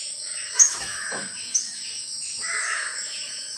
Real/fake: fake